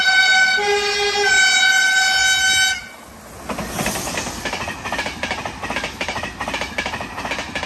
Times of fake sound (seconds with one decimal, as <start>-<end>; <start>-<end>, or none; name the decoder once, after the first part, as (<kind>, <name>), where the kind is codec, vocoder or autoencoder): none